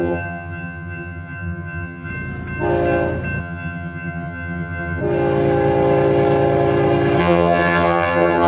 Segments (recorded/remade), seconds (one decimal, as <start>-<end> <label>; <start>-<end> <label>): 0.0-2.1 remade; 2.1-3.4 recorded; 3.4-5.0 remade; 5.0-7.2 recorded; 7.2-8.5 remade